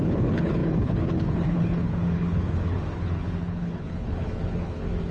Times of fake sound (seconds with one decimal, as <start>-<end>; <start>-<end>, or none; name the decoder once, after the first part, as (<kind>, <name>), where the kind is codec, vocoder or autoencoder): 0.0-5.1 (codec, HILCodec)